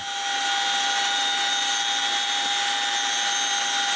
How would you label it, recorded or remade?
recorded